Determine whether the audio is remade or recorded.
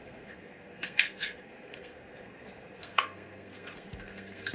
remade